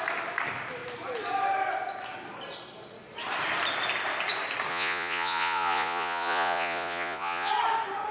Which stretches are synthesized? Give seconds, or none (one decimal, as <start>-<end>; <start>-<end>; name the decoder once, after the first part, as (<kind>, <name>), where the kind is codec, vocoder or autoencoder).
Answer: 4.7-7.5 (vocoder, Vocos)